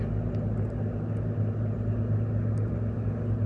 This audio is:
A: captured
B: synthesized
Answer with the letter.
A